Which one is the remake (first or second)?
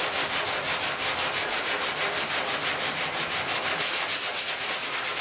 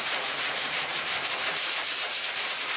second